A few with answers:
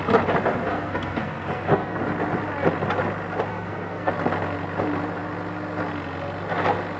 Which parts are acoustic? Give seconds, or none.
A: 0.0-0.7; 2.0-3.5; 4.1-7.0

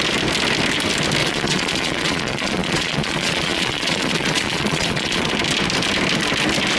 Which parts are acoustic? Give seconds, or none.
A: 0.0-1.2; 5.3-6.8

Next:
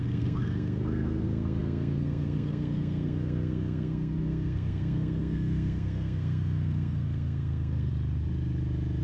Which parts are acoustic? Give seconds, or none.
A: 7.9-9.0

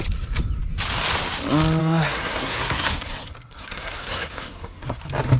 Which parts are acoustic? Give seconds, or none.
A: 0.0-1.8; 5.0-5.4

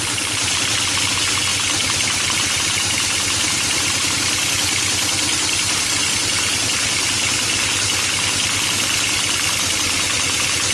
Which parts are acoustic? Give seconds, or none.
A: 0.0-1.5; 4.2-10.7

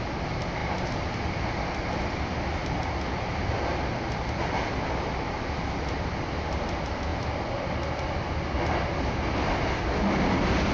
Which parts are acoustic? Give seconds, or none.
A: 0.0-10.7